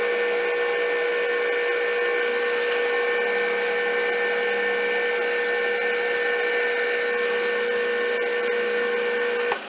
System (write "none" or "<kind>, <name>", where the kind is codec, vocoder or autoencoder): none